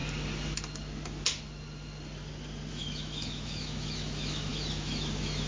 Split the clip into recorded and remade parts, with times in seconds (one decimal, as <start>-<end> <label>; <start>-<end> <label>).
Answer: 0.0-2.7 recorded; 2.7-5.5 remade